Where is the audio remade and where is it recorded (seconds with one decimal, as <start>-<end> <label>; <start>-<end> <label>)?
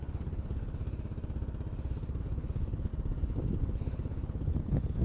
0.0-0.8 remade; 0.8-2.2 recorded; 2.2-2.9 remade; 2.9-3.6 recorded; 3.6-5.0 remade